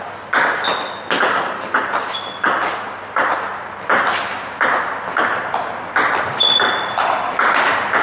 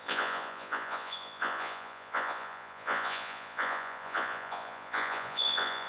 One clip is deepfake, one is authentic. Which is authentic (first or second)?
first